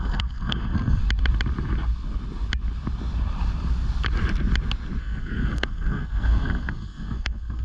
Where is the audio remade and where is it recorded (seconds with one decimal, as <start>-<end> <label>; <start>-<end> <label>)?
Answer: 0.0-1.0 remade; 1.0-5.0 recorded; 5.0-7.6 remade